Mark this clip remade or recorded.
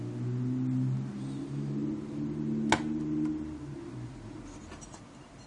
recorded